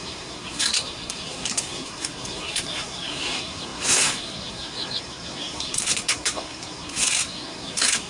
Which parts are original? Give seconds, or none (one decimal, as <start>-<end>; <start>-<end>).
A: none